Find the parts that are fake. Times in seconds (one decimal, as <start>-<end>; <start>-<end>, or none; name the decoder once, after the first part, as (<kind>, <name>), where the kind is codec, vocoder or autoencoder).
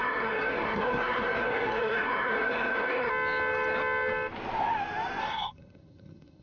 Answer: 0.0-3.1 (codec, SNAC); 5.2-6.4